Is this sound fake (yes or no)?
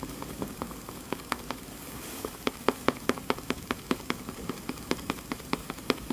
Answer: yes